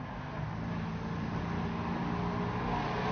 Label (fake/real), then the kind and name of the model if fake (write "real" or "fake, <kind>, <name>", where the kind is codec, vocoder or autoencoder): real